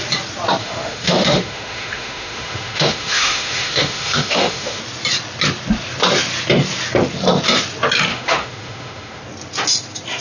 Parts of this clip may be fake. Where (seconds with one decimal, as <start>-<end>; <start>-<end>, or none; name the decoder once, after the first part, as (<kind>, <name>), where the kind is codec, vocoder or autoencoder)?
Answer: 0.6-4.8 (autoencoder, DAC-VAE); 8.1-9.2